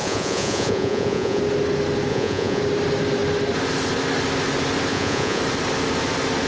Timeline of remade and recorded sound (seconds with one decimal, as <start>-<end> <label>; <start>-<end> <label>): 0.0-1.4 remade; 1.4-2.1 recorded; 2.1-2.6 remade; 2.6-4.9 recorded; 4.9-5.4 remade; 5.4-6.5 recorded